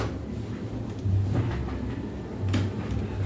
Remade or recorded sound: recorded